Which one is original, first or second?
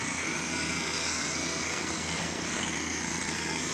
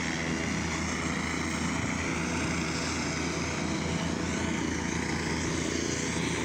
second